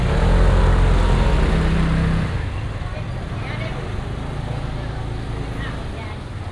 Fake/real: real